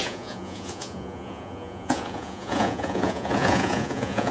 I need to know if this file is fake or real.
fake